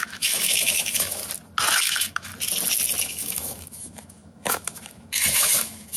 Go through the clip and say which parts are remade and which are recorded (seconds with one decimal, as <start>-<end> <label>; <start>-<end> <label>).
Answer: 0.0-1.2 remade; 1.2-1.8 recorded; 1.8-2.3 remade; 2.3-3.0 recorded; 3.0-6.0 remade